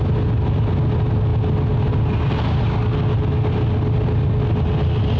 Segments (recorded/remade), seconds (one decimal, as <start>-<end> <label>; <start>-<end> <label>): 0.0-5.2 recorded